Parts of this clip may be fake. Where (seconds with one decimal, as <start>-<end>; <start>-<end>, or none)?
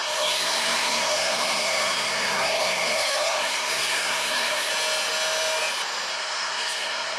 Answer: 0.0-4.7; 6.1-7.2